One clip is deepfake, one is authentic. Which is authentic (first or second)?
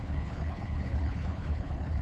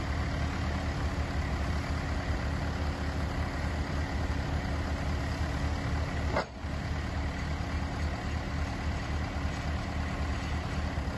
second